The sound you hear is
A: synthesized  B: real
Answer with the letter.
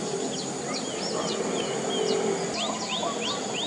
B